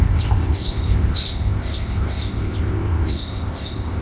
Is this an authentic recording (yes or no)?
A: no